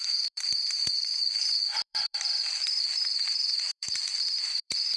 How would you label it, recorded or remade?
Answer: remade